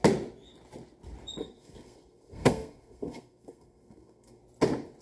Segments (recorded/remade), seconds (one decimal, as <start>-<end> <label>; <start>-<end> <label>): 0.0-1.4 recorded; 1.4-4.4 remade; 4.4-5.0 recorded